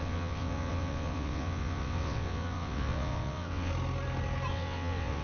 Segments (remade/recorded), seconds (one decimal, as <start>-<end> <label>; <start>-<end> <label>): 0.0-3.7 remade; 3.7-4.5 recorded; 4.5-5.2 remade